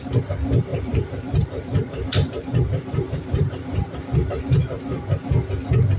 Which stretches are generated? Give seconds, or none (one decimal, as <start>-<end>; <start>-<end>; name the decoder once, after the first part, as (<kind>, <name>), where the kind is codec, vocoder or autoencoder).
0.7-4.3 (vocoder, BigVGAN v2)